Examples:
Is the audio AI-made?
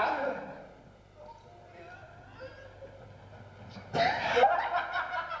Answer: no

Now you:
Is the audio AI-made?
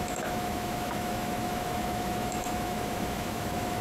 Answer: yes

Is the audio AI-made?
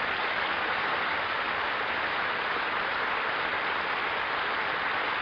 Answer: no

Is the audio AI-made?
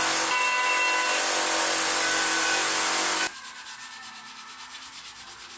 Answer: no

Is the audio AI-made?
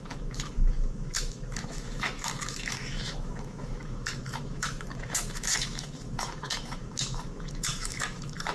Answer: yes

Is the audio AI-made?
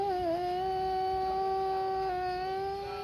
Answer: no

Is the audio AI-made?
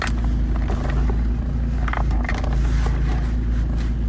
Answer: no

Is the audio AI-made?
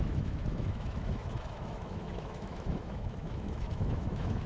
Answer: yes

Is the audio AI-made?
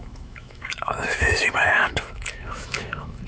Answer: yes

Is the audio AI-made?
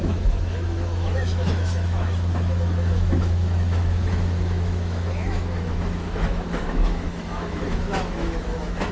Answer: yes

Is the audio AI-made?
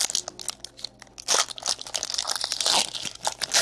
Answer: no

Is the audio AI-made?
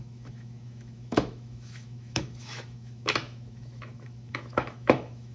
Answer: yes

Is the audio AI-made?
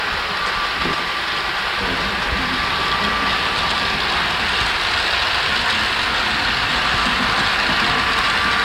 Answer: no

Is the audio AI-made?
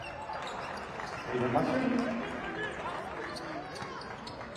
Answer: no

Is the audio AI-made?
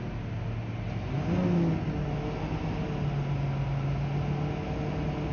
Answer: no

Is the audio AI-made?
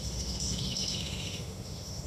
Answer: yes